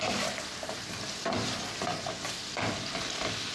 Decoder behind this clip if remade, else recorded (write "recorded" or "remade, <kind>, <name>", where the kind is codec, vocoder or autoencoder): remade, vocoder, BigVGAN v2